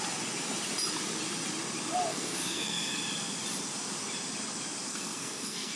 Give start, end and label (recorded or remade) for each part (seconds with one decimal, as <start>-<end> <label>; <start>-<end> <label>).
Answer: 0.0-2.1 recorded; 2.1-3.0 remade; 3.0-4.9 recorded; 4.9-5.8 remade

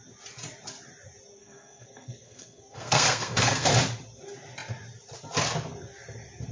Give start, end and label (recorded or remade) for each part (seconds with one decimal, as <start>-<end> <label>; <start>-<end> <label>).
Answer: 0.0-1.4 recorded; 1.4-3.7 remade; 3.7-6.5 recorded

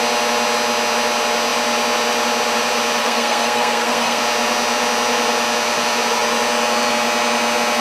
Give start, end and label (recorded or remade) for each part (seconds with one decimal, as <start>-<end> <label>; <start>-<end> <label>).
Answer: 0.0-3.0 recorded; 3.0-4.2 remade; 4.2-7.8 recorded

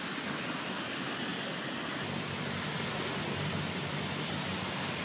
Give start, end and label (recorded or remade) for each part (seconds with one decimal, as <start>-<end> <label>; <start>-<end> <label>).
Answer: 0.0-5.0 recorded

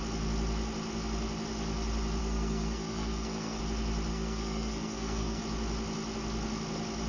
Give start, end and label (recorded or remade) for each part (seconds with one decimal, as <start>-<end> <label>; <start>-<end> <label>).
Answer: 0.0-2.2 recorded; 2.2-3.6 remade; 3.6-4.1 recorded; 4.1-5.4 remade; 5.4-7.1 recorded